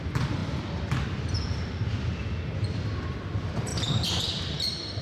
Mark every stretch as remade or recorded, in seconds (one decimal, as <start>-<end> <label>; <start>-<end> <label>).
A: 0.0-5.0 remade